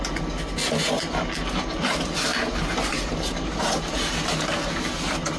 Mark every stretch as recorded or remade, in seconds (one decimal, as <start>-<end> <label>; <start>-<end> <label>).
0.0-2.3 recorded; 2.3-3.9 remade; 3.9-5.4 recorded